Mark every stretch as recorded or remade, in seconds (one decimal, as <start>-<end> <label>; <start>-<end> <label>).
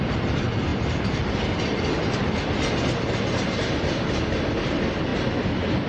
0.0-5.9 recorded